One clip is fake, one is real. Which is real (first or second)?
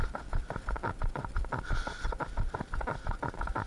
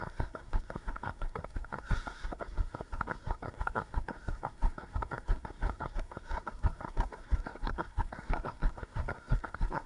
first